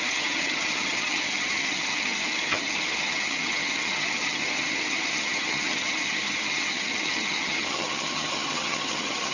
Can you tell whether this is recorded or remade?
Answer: remade